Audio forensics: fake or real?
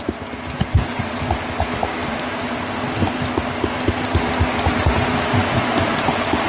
real